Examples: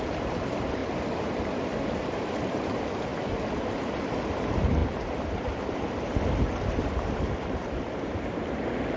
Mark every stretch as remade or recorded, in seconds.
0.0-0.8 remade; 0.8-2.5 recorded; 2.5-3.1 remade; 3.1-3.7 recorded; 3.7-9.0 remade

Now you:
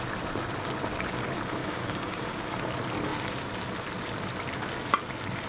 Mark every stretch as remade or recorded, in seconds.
0.0-1.6 recorded; 1.6-2.4 remade; 2.4-5.5 recorded

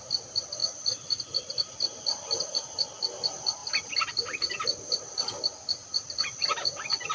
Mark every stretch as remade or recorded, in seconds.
0.0-7.1 recorded